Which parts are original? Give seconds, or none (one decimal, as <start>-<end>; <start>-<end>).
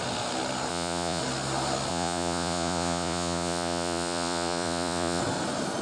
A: 0.0-0.7; 1.2-1.9; 5.2-5.8